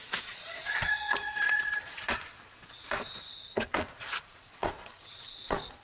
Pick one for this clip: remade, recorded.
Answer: remade